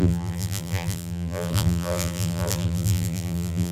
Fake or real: fake